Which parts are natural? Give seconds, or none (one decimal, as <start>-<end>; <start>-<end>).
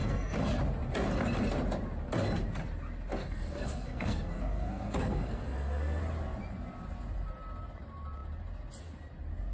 0.6-3.1; 6.0-9.5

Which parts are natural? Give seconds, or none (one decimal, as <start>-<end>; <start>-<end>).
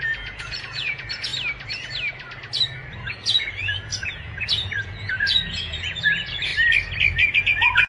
1.3-3.1; 6.5-7.4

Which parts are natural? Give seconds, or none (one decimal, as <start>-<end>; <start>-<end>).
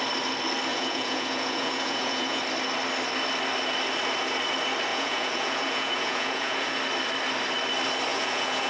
0.0-0.7; 2.4-4.9; 6.8-8.1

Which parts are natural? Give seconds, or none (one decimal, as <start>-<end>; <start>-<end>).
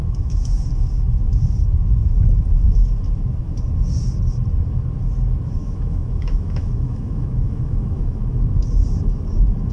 0.7-5.6; 8.5-9.7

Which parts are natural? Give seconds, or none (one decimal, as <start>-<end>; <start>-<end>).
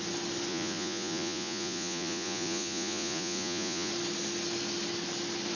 0.0-0.5; 3.9-5.6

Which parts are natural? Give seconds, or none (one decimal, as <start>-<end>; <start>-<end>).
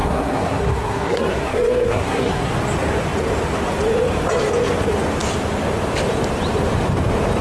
2.5-7.4